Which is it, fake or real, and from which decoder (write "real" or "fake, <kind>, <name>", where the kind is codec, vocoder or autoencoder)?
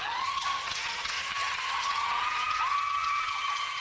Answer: fake, vocoder, HiFi-GAN